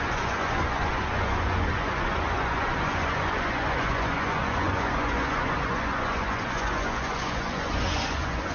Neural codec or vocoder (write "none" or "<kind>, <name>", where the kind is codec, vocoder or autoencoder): vocoder, Vocos